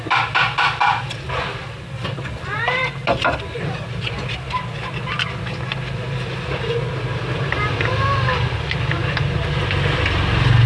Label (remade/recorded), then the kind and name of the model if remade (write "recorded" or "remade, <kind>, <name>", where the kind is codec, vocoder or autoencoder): recorded